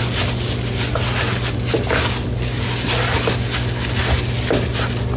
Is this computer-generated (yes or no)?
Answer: no